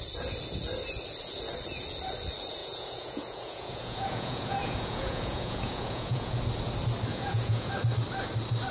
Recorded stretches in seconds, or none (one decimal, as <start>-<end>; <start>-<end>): 0.0-2.6; 6.4-7.1; 7.7-8.7

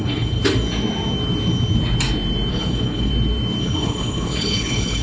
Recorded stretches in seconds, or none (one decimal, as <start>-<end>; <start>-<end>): 0.4-2.5; 3.1-3.6

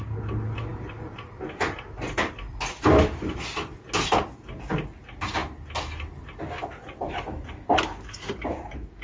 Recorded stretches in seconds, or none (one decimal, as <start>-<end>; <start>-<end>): 0.0-9.0

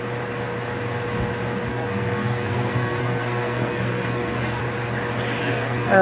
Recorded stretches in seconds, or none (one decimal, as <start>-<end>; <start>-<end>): 0.0-1.7; 4.6-5.4

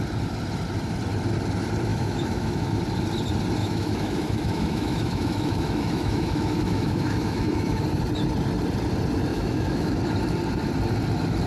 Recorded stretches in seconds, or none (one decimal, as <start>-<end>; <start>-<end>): 0.0-1.9; 2.8-3.6; 7.8-9.3; 10.0-11.5

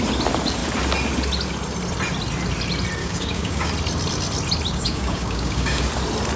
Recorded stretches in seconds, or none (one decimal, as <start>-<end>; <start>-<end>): 0.0-3.0; 3.7-4.7; 5.9-6.4

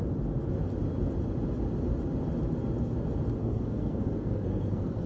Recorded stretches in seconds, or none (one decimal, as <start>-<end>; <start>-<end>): 0.0-3.4

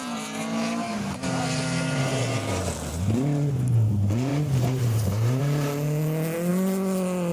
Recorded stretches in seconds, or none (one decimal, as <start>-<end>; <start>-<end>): 0.0-4.3; 5.4-7.3